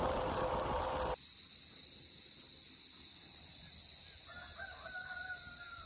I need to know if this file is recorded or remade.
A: recorded